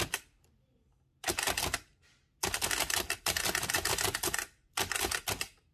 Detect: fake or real real